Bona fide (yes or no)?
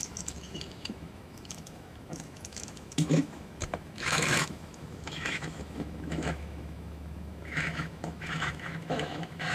no